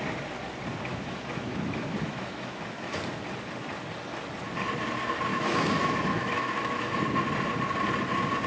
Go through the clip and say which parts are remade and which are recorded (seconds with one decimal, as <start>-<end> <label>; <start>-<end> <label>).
0.0-0.9 recorded; 0.9-3.0 remade; 3.0-5.3 recorded; 5.3-7.0 remade; 7.0-8.5 recorded

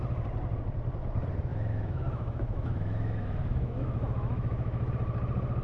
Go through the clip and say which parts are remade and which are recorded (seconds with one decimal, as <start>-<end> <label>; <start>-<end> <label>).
0.0-1.5 recorded; 1.5-4.9 remade; 4.9-5.6 recorded

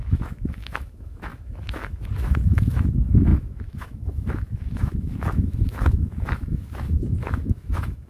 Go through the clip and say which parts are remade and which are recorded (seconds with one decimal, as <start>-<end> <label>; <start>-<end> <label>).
0.0-8.1 remade

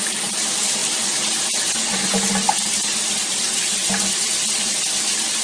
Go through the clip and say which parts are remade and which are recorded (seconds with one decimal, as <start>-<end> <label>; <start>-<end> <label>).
0.0-5.4 recorded

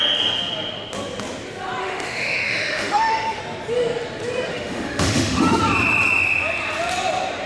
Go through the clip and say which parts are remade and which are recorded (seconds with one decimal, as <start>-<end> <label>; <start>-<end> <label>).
0.0-1.8 recorded; 1.8-3.4 remade; 3.4-4.5 recorded; 4.5-5.6 remade; 5.6-7.5 recorded